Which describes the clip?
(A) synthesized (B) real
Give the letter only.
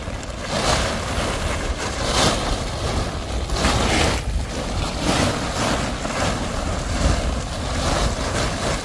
B